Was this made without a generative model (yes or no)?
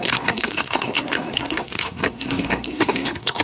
no